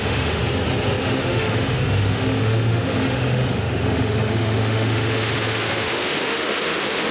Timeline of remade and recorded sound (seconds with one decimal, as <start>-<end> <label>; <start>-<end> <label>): 0.0-0.4 remade; 0.4-1.0 recorded; 1.0-7.1 remade